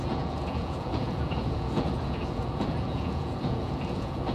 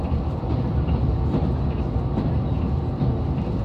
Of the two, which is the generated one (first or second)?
first